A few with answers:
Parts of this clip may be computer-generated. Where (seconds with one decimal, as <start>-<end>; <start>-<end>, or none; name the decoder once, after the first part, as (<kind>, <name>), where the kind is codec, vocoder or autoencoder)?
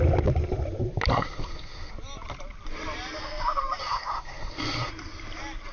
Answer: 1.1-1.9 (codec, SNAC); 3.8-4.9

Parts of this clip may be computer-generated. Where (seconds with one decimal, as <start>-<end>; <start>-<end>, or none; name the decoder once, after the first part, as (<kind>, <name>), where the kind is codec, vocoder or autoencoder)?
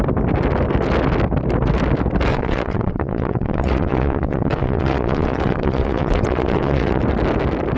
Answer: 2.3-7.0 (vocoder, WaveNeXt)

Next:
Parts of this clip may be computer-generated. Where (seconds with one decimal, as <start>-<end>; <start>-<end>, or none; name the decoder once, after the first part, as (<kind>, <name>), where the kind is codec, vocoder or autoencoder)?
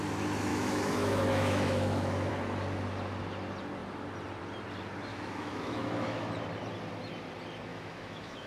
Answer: 0.5-2.3 (autoencoder, DAC-VAE); 5.1-6.3; 7.7-8.5